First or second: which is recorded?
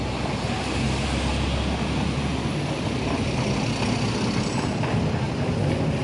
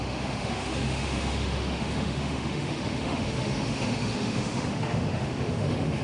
first